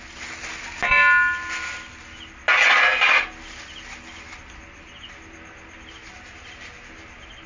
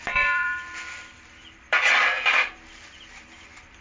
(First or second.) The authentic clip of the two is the first